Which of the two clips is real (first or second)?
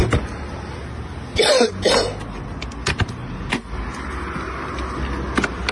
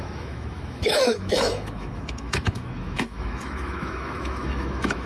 first